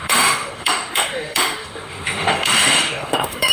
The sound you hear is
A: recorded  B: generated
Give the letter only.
B